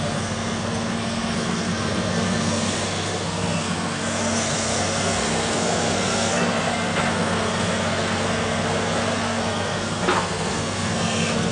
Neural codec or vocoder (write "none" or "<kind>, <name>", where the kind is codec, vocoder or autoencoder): codec, SNAC